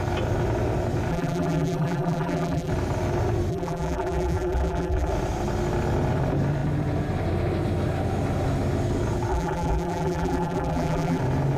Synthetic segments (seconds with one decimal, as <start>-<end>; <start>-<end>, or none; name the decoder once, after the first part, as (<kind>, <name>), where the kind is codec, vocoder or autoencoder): 1.1-2.7 (vocoder, BigVGAN v2); 3.5-5.1; 9.3-11.2